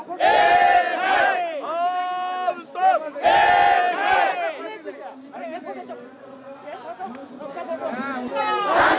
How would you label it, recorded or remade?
recorded